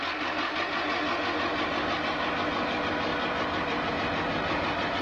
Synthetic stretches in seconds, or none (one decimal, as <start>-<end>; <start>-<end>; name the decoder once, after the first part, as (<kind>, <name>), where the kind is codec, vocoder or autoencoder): 3.1-3.9 (vocoder, BigVGAN v2)